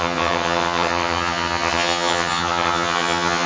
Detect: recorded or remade remade